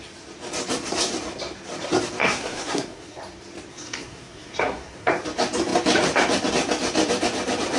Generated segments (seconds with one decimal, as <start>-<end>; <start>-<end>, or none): 2.2-3.2; 3.7-5.1